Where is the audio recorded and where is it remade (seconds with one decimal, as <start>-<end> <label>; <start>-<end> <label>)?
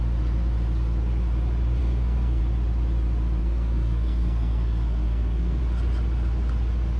0.0-1.8 recorded; 1.8-2.4 remade; 2.4-3.4 recorded; 3.4-5.6 remade; 5.6-7.0 recorded